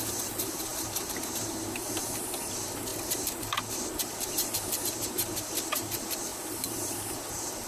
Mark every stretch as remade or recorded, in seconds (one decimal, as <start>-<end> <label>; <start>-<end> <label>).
0.0-7.7 remade